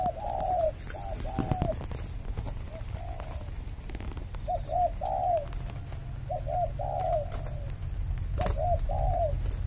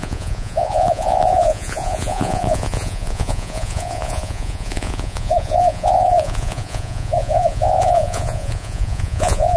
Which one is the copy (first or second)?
second